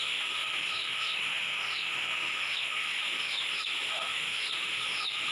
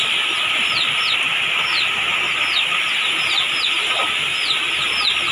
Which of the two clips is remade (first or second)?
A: first